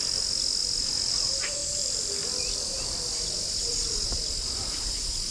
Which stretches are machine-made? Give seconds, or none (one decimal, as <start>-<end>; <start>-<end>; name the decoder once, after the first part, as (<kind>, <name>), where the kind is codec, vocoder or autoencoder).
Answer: 0.6-1.1 (vocoder, BigVGAN v2)